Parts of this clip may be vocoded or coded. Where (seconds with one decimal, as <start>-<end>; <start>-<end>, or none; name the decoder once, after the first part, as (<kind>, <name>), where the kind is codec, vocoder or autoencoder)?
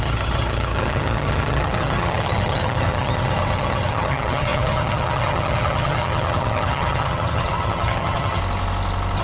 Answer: 0.0-8.4 (vocoder, HiFi-GAN)